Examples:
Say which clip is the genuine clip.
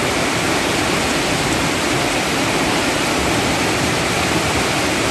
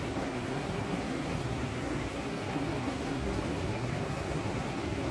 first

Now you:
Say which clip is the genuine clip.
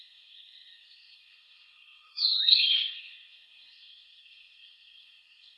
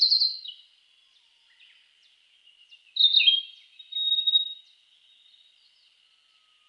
second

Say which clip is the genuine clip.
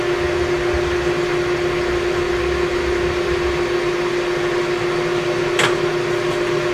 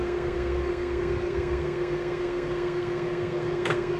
first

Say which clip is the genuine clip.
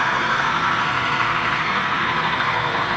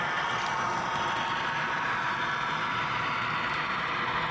second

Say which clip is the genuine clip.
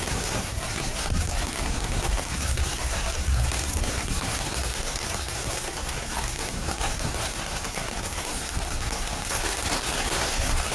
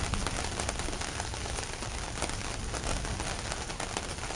second